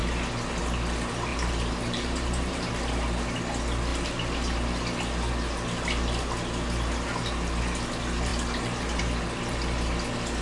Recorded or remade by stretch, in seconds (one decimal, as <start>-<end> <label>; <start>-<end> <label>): 0.0-1.3 recorded; 1.3-2.7 remade; 2.7-10.4 recorded